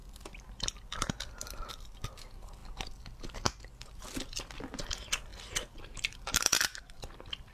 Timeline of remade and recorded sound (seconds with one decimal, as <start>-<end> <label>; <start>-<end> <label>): 0.0-2.6 remade; 2.6-3.8 recorded; 3.8-5.3 remade; 5.3-5.8 recorded; 5.8-7.5 remade